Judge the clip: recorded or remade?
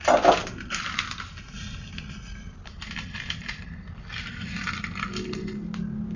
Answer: recorded